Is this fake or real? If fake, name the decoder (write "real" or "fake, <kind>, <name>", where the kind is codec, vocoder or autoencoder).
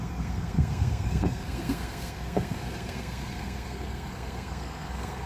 fake, codec, SNAC